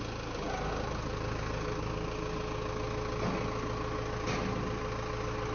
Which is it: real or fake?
real